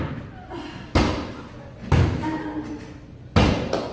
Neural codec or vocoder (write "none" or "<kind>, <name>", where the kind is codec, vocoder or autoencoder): none